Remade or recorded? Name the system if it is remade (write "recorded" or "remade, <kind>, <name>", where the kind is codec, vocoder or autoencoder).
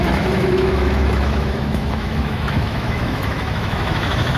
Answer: remade, autoencoder, DAC-VAE